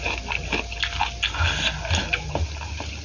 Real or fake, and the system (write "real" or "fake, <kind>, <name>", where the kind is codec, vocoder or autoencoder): real